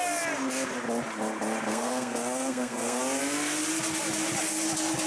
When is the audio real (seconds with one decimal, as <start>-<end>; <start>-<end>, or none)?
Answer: 0.0-1.7; 3.0-5.1

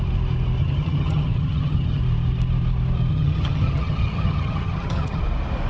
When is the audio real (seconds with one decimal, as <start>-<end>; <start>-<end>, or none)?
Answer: 0.0-0.6; 2.0-3.1; 5.2-5.7

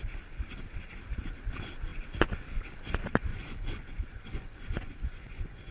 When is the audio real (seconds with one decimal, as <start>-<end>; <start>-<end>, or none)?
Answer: 0.0-3.3

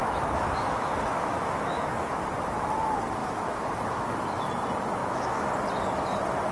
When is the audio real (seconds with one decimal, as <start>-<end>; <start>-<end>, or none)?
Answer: 2.1-3.2; 4.4-5.0; 5.5-6.5

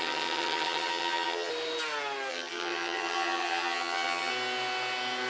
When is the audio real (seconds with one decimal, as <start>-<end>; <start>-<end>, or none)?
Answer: 1.5-2.3; 4.3-5.3

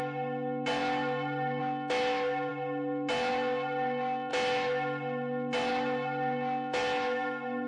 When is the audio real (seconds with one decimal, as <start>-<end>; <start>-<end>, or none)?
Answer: 0.0-7.7

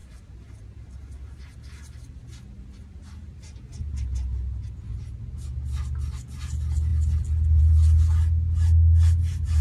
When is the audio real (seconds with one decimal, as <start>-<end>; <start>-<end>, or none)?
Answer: 0.0-9.6

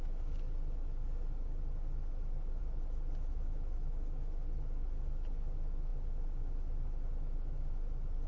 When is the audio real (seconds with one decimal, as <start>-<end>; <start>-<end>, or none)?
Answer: 0.0-8.3